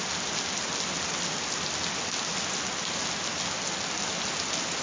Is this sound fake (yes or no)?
no